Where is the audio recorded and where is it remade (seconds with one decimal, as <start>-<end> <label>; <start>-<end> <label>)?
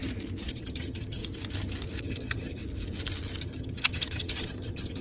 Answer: 0.0-0.5 recorded; 0.5-1.2 remade; 1.2-2.0 recorded; 2.0-2.6 remade; 2.6-3.4 recorded; 3.4-5.0 remade